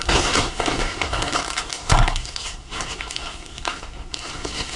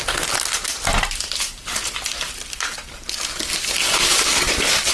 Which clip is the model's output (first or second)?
first